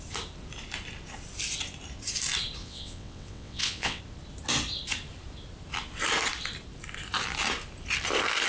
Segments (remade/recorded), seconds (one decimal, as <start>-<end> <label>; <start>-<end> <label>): 0.0-2.6 recorded; 2.6-4.0 remade; 4.0-8.5 recorded